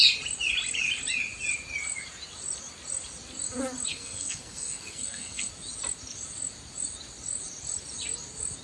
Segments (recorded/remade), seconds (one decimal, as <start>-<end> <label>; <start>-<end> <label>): 0.0-3.9 recorded; 3.9-5.5 remade; 5.5-8.6 recorded